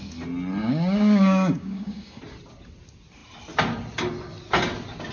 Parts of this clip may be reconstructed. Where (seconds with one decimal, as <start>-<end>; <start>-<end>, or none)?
0.6-2.2